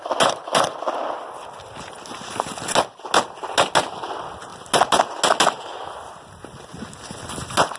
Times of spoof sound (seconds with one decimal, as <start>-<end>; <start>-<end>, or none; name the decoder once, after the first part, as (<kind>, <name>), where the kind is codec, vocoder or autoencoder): none